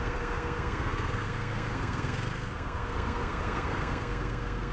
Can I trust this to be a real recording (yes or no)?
no